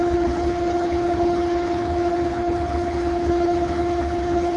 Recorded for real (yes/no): no